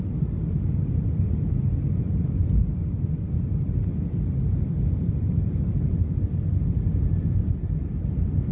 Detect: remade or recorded recorded